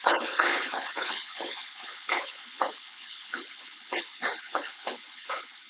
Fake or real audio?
fake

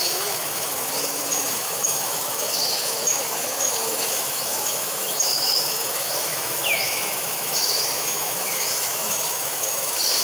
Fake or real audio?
fake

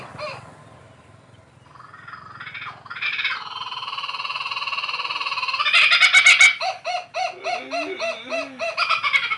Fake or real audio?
real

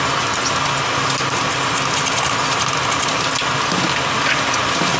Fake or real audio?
real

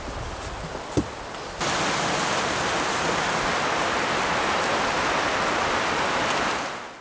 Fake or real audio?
real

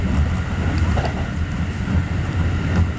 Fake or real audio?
real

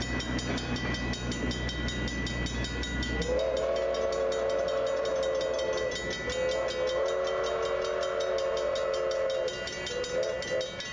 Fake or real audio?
real